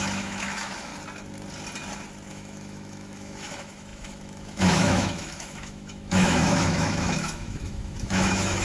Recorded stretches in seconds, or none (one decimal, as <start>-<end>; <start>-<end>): 0.9-2.3